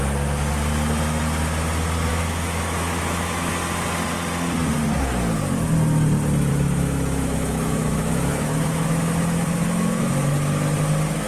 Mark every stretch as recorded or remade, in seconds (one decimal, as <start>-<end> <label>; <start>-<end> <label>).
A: 0.0-2.1 recorded; 2.1-3.5 remade; 3.5-6.5 recorded; 6.5-10.1 remade; 10.1-11.3 recorded